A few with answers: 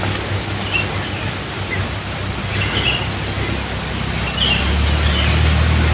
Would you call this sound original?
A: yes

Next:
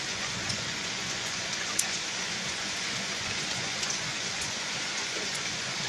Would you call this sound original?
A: no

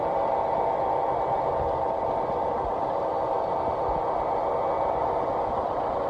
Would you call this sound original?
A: yes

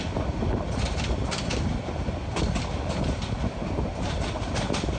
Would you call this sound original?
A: yes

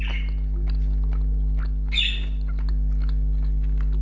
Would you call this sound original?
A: yes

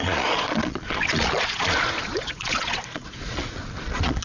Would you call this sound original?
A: no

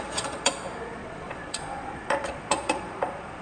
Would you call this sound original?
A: no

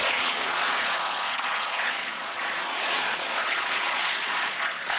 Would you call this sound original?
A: no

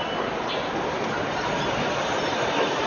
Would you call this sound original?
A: yes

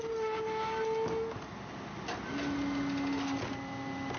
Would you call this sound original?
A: yes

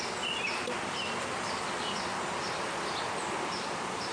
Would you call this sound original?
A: yes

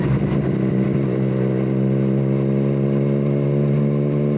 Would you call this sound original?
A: yes